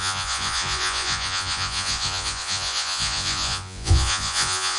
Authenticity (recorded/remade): remade